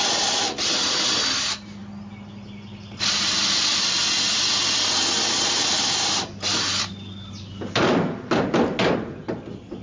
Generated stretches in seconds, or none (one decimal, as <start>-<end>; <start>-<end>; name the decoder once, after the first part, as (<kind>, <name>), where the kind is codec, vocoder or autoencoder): none